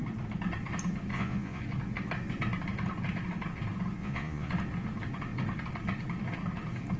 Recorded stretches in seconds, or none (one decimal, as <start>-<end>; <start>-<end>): 0.0-1.1; 1.6-4.0; 4.5-7.0